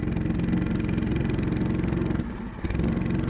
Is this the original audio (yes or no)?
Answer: yes